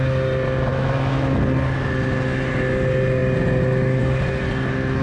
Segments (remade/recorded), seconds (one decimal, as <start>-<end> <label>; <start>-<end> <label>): 0.0-0.7 recorded; 0.7-1.4 remade; 1.4-5.0 recorded